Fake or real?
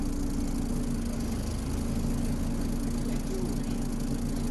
real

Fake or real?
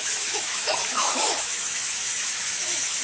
fake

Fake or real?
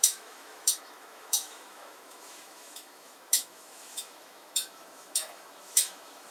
fake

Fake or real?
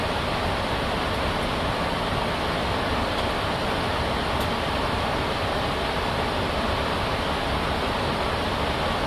real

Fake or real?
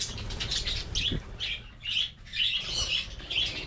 real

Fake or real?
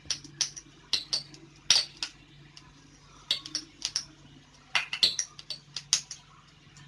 real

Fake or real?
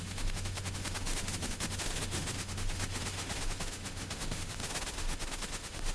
fake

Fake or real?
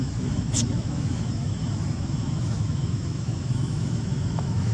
fake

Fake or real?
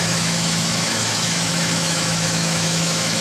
fake